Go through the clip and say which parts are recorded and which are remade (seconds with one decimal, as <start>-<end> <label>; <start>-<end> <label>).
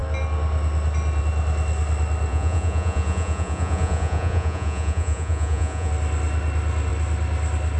0.0-2.3 recorded; 2.3-5.9 remade; 5.9-7.8 recorded